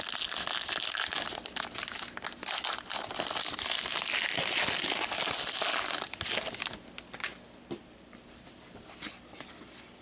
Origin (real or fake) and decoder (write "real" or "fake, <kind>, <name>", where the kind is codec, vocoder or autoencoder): real